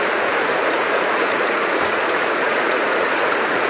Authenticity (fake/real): fake